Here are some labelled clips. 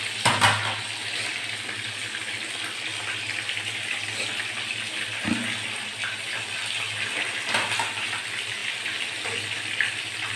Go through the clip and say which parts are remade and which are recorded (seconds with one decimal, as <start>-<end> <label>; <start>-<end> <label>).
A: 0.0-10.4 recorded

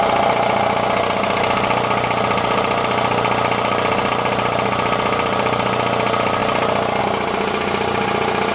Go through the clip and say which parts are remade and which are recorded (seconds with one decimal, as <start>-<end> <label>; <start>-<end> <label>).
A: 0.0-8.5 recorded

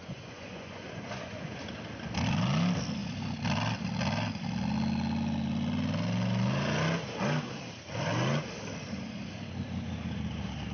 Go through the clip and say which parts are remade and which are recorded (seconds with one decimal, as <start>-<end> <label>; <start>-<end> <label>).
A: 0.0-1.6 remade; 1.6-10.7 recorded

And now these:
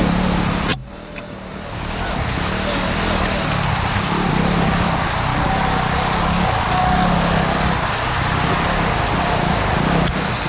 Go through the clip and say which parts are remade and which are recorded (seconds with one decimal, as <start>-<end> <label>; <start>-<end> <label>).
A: 0.0-5.3 recorded; 5.3-7.6 remade; 7.6-10.5 recorded